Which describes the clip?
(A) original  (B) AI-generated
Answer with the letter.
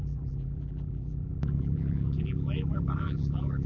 B